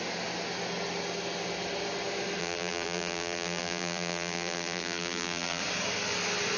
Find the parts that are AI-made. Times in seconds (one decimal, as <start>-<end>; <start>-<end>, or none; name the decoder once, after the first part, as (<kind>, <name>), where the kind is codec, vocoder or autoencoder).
2.4-5.6 (vocoder, BigVGAN v2)